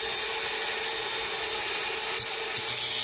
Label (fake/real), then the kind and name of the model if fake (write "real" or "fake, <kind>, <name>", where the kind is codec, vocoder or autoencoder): real